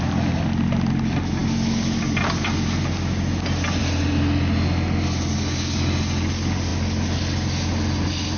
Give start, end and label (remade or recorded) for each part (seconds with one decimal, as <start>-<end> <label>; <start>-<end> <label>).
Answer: 0.0-8.4 recorded